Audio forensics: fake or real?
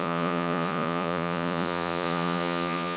fake